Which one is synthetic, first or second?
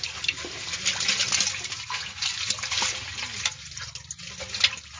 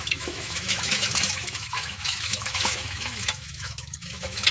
second